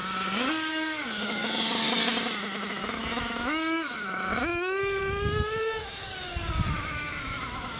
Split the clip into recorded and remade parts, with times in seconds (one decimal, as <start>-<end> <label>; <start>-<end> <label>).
0.0-0.7 recorded; 0.7-1.4 remade; 1.4-2.7 recorded; 2.7-6.1 remade; 6.1-6.7 recorded; 6.7-7.8 remade